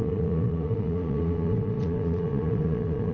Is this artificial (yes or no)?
yes